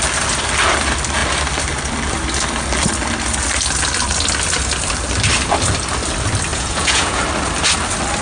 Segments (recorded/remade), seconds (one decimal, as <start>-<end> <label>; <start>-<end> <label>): 0.0-6.5 recorded; 6.5-7.2 remade; 7.2-8.2 recorded

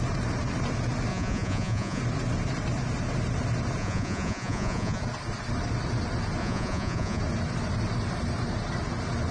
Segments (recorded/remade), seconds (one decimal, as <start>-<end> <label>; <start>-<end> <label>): 0.0-1.1 recorded; 1.1-2.0 remade; 2.0-3.8 recorded; 3.8-5.0 remade; 5.0-6.4 recorded; 6.4-7.2 remade; 7.2-9.3 recorded

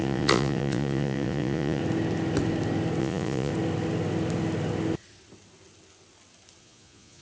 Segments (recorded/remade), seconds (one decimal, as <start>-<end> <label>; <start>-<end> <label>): 0.0-1.8 remade; 1.8-3.0 recorded; 3.0-3.5 remade; 3.5-6.6 recorded; 6.6-7.2 remade

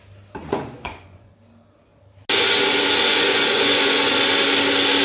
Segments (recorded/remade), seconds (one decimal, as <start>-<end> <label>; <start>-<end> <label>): 0.0-0.4 recorded; 0.4-1.3 remade; 1.3-3.1 recorded; 3.1-4.1 remade; 4.1-5.0 recorded

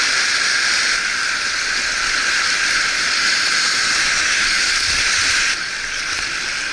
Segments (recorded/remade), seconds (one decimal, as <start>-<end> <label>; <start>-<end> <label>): 0.0-6.7 recorded

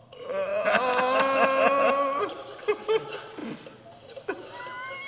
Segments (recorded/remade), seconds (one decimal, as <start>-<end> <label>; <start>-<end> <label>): 0.0-5.1 recorded